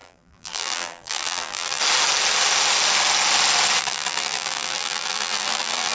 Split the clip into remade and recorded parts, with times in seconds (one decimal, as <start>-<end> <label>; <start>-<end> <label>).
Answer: 0.0-1.8 remade; 1.8-3.8 recorded; 3.8-5.9 remade